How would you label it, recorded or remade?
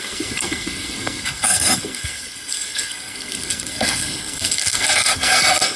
remade